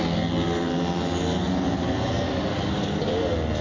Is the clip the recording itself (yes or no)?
yes